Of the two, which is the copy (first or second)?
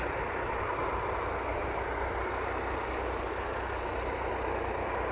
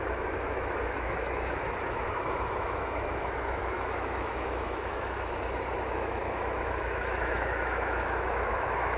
second